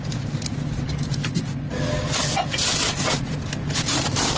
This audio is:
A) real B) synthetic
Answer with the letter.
A